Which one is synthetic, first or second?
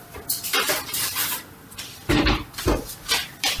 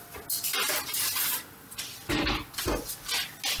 first